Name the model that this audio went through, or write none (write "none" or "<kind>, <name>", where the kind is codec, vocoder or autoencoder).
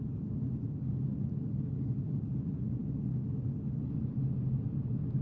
none